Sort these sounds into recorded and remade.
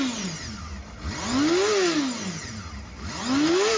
recorded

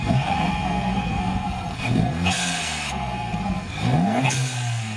remade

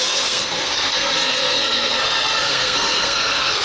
remade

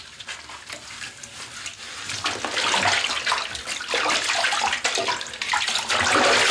recorded